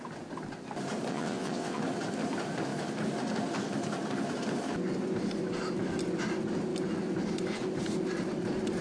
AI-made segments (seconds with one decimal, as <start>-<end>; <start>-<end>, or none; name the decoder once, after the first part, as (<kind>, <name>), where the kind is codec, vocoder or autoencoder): 1.1-1.8 (vocoder, WaveNeXt)